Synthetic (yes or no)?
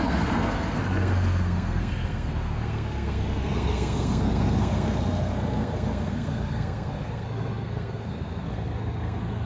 yes